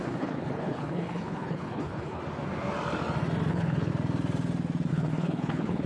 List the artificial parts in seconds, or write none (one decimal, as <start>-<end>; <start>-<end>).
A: 0.0-2.2; 3.5-3.9; 4.9-5.9